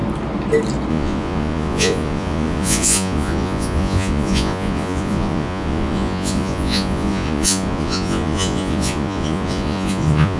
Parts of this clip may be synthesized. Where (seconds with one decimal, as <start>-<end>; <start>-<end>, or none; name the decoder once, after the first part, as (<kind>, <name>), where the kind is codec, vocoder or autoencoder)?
0.9-10.4 (vocoder, Vocos)